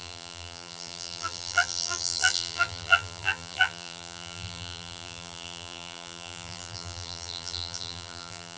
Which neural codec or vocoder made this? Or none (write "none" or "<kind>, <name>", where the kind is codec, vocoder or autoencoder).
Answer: vocoder, BigVGAN v2